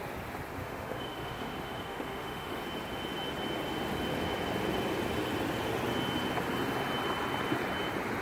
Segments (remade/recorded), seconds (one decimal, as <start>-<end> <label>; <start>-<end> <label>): 0.0-0.6 recorded; 0.6-2.6 remade; 2.6-8.2 recorded